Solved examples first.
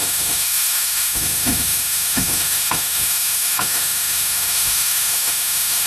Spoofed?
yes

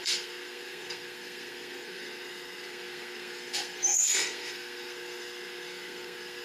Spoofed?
yes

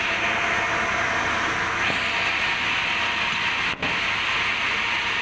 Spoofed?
no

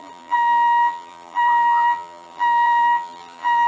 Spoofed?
yes